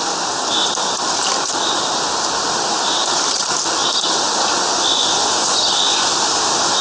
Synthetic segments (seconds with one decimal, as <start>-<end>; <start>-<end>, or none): 4.9-6.1